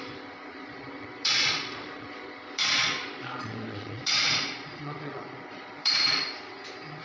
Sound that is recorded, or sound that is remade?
remade